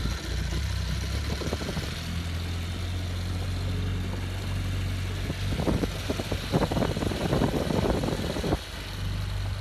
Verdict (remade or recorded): recorded